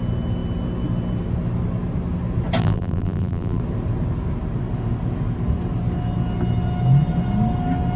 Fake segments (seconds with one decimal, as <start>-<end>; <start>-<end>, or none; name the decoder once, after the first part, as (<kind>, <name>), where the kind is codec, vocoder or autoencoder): 2.6-3.6 (vocoder, BigVGAN v2)